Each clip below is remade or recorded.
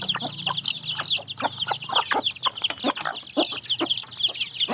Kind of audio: recorded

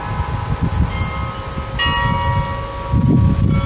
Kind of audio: recorded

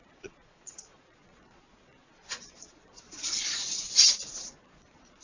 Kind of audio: remade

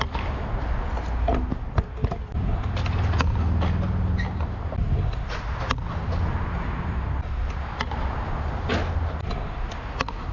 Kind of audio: recorded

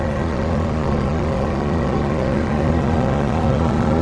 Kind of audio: remade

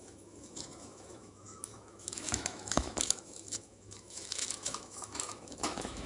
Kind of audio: remade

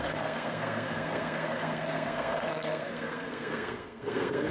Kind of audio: remade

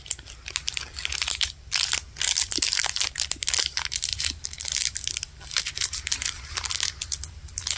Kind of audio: recorded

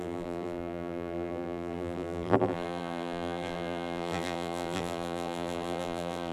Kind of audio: remade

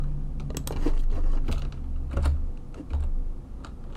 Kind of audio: recorded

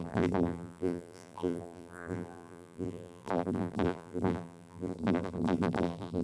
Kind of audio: remade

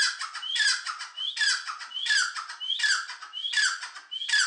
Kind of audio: recorded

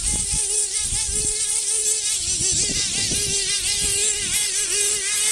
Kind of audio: recorded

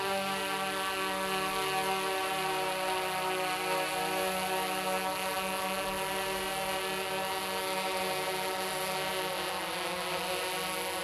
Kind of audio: recorded